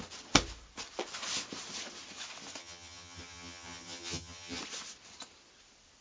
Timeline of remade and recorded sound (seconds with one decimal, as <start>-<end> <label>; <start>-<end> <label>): 0.0-2.6 recorded; 2.6-4.6 remade; 4.6-6.0 recorded